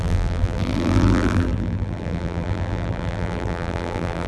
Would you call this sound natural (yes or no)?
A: no